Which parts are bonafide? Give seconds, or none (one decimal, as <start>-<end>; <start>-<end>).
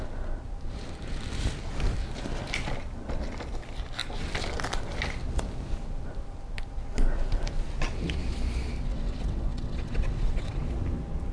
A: 0.0-8.9; 10.6-11.3